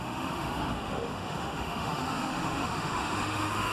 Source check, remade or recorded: remade